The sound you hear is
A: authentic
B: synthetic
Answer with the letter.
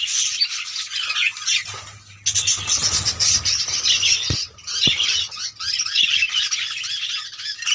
A